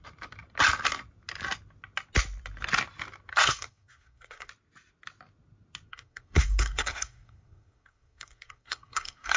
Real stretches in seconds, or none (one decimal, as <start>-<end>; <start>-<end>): 0.0-3.3; 4.5-5.9